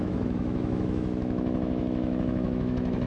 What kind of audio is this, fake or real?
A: fake